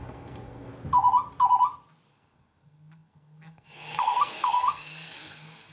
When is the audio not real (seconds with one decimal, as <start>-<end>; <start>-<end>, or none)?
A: 0.0-0.7; 2.1-5.7